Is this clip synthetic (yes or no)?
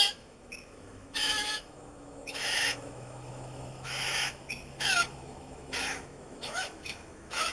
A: yes